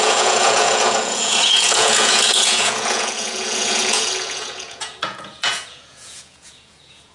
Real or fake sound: fake